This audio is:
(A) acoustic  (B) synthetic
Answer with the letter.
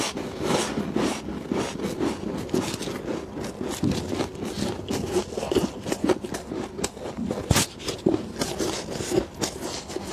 A